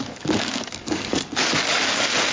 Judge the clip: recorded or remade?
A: remade